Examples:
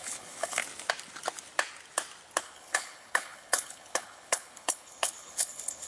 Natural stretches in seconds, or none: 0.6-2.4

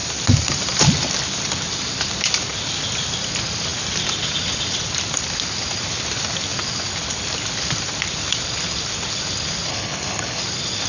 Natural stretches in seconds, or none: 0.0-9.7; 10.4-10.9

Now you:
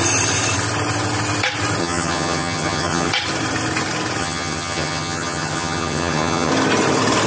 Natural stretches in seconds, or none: 0.0-1.8; 3.1-4.2; 6.5-7.3